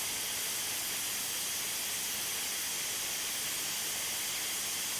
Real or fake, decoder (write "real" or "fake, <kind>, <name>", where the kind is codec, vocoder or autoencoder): real